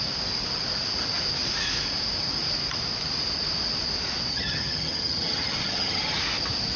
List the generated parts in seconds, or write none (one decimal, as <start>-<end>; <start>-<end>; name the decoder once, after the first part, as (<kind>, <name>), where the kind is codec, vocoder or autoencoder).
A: 4.3-6.2 (vocoder, HiFi-GAN)